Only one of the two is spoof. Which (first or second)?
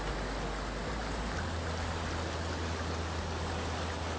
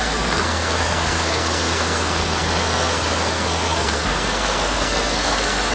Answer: second